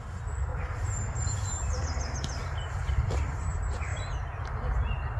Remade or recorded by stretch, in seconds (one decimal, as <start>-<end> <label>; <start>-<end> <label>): 0.0-0.5 recorded; 0.5-2.2 remade; 2.2-3.9 recorded; 3.9-4.5 remade; 4.5-5.2 recorded